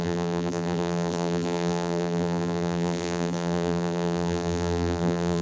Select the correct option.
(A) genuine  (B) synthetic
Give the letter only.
B